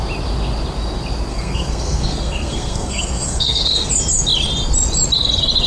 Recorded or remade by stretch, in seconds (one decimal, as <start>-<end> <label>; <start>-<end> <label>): 0.0-1.3 recorded; 1.3-3.9 remade; 3.9-5.7 recorded